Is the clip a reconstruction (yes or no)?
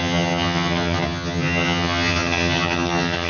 yes